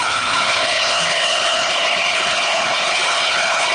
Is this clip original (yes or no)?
no